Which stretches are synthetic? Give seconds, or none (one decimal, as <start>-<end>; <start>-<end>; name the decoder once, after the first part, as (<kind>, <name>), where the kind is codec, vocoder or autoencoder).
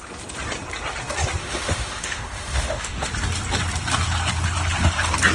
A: 1.4-3.1 (autoencoder, DAC-VAE)